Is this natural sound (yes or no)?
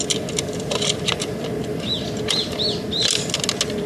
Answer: yes